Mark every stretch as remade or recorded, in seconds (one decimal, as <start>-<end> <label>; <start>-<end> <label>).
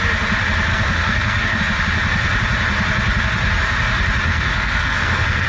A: 0.0-0.7 recorded; 0.7-1.6 remade; 1.6-4.3 recorded; 4.3-5.5 remade